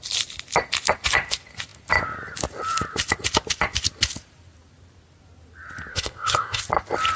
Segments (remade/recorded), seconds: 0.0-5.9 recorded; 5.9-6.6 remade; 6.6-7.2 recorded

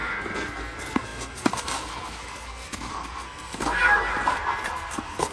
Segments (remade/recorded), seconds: 0.0-3.8 remade; 3.8-4.3 recorded; 4.3-5.3 remade

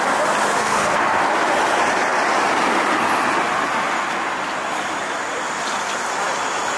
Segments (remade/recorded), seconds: 0.0-0.6 recorded; 0.6-1.2 remade; 1.2-6.8 recorded

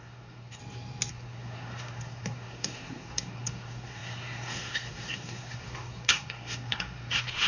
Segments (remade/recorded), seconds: 0.0-0.6 remade; 0.6-1.1 recorded; 1.1-7.5 remade

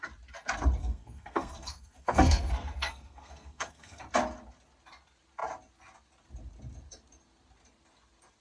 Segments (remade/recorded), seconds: 0.0-0.8 recorded; 0.8-4.0 remade; 4.0-8.4 recorded

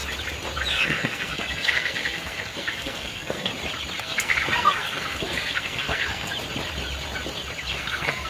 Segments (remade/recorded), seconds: 0.0-0.7 recorded; 0.7-3.5 remade; 3.5-4.0 recorded; 4.0-6.3 remade; 6.3-7.7 recorded; 7.7-8.3 remade